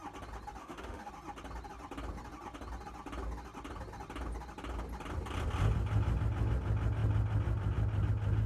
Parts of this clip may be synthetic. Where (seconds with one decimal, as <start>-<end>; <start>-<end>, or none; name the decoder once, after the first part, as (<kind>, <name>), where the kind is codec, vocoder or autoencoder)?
0.6-1.1 (autoencoder, DAC-VAE)